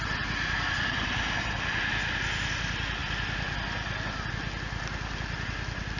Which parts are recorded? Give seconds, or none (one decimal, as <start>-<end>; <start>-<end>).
0.0-6.0